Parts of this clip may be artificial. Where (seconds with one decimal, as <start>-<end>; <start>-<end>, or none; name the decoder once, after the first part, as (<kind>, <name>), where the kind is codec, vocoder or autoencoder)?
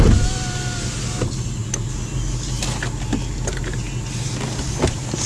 none